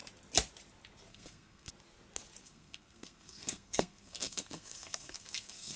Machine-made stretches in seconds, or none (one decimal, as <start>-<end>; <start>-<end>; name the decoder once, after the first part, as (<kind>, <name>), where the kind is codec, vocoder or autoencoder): 1.1-1.7 (codec, SNAC); 2.4-5.8